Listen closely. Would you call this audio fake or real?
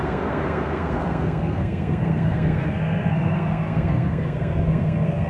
fake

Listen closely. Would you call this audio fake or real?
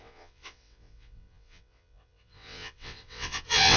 fake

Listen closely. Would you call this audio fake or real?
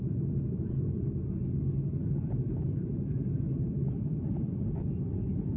real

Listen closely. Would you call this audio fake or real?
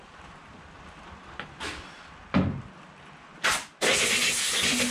real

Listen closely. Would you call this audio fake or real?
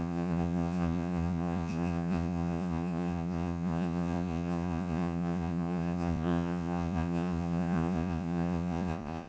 fake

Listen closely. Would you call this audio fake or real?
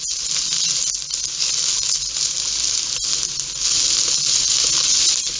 real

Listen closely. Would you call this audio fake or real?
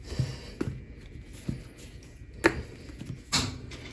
real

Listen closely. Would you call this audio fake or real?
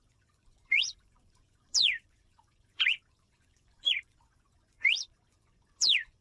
fake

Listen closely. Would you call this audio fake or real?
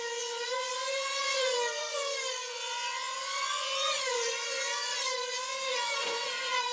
fake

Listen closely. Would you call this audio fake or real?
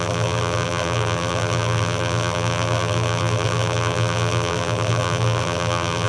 fake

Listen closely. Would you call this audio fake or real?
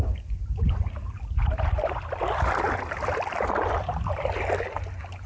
real